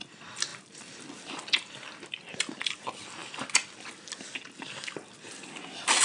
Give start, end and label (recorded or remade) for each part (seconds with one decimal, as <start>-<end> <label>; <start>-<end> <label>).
0.0-6.0 recorded